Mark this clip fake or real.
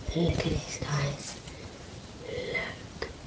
real